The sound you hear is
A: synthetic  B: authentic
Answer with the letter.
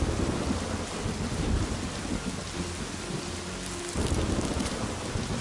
B